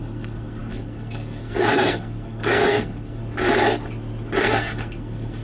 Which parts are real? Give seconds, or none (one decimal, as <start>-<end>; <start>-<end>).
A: 3.2-4.4